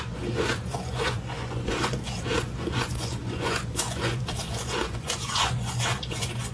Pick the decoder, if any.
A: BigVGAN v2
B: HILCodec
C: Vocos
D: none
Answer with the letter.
C